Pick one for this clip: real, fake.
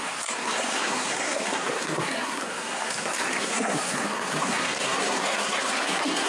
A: fake